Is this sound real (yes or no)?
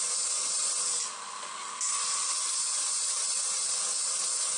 yes